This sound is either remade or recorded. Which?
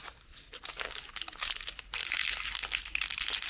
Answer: recorded